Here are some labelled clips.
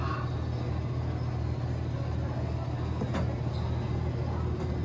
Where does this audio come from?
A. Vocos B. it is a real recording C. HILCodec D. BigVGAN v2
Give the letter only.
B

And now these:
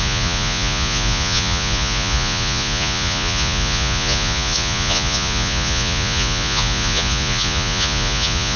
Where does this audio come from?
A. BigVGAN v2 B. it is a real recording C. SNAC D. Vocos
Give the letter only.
D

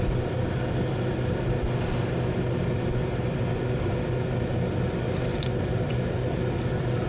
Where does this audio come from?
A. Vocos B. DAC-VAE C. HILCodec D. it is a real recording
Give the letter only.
D